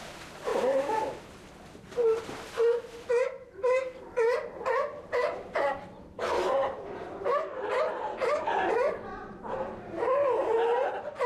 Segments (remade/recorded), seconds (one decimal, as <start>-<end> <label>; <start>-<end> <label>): 0.0-6.6 recorded; 6.6-8.7 remade; 8.7-11.3 recorded